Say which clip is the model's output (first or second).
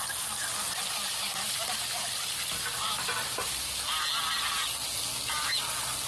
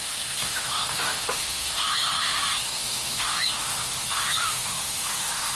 second